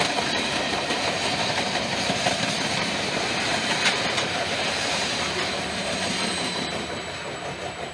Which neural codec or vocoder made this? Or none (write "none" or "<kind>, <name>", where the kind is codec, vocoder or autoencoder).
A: vocoder, BigVGAN v2